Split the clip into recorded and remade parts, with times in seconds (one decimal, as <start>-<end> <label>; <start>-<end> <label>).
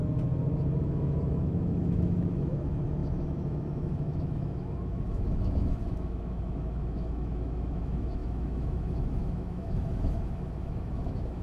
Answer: 0.0-0.8 recorded; 0.8-11.4 remade